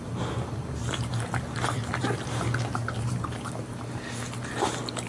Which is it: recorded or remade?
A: recorded